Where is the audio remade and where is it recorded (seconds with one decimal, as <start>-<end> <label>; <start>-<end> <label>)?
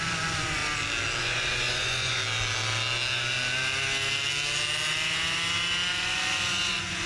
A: 0.0-0.6 remade; 0.6-1.2 recorded; 1.2-2.2 remade; 2.2-5.9 recorded; 5.9-7.1 remade